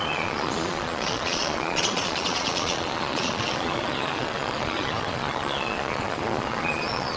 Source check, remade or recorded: remade